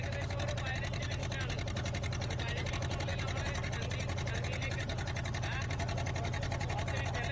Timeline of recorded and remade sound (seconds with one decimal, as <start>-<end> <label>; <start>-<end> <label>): 0.0-7.3 recorded